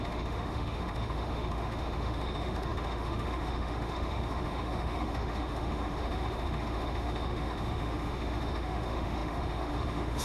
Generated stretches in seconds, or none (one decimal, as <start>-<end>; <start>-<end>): 0.0-10.2